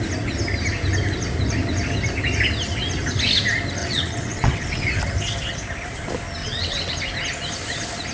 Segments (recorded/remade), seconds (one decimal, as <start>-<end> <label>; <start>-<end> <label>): 0.0-3.8 recorded; 3.8-5.0 remade; 5.0-6.4 recorded; 6.4-6.9 remade; 6.9-8.1 recorded